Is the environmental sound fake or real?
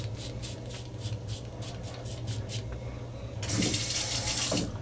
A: real